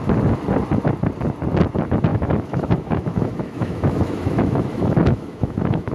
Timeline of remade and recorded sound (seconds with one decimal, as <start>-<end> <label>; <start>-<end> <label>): 0.0-2.1 recorded; 2.1-5.9 remade